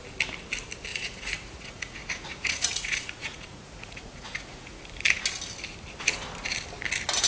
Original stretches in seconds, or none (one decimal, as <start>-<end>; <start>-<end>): 0.0-0.9; 4.8-7.3